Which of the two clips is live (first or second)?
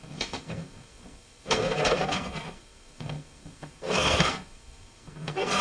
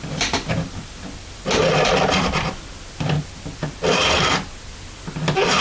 second